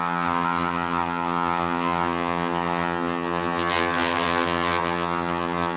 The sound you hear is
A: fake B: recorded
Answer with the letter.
A